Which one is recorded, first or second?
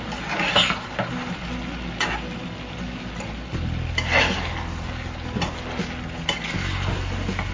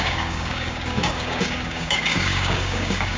first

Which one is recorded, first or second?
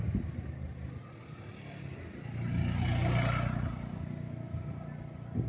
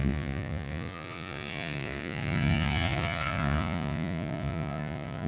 first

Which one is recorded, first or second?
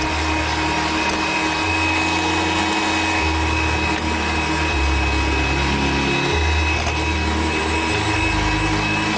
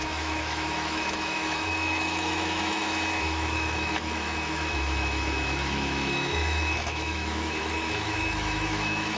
first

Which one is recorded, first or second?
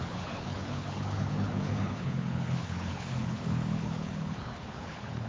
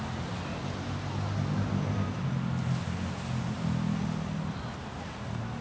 second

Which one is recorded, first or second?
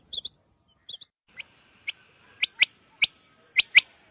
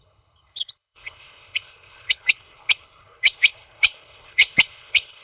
first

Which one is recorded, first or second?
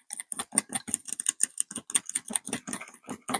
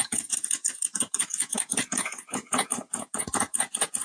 first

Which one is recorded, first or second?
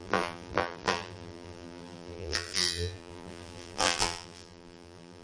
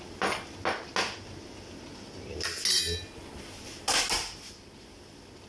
second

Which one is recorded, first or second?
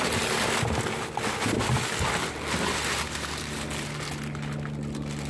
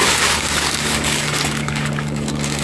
first